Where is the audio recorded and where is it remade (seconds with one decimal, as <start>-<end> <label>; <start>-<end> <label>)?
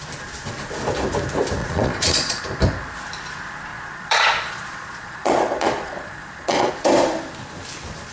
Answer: 0.0-1.6 recorded; 1.6-2.4 remade; 2.4-3.7 recorded; 3.7-6.7 remade; 6.7-8.1 recorded